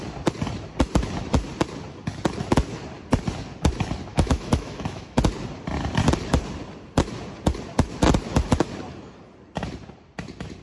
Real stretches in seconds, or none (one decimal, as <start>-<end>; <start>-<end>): 0.0-4.1; 5.2-10.6